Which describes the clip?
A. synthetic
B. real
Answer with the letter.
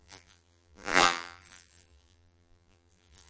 A